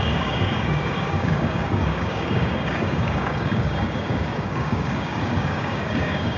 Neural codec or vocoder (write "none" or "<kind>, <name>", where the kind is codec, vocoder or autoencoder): codec, DAC